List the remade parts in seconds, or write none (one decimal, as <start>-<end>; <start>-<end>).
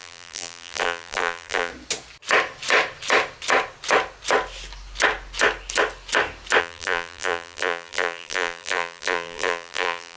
0.0-1.7; 6.6-10.2